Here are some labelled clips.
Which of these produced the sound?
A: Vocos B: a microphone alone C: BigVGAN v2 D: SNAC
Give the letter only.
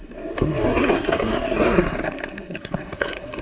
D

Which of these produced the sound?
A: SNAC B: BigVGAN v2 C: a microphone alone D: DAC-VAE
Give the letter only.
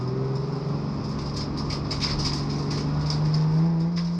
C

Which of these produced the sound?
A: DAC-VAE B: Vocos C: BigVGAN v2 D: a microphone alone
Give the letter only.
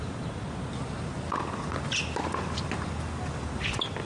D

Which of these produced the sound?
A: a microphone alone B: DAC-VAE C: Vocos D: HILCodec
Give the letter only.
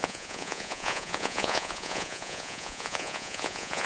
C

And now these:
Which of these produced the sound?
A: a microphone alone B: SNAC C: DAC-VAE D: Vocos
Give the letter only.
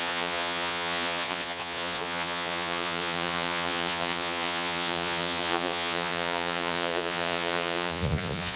D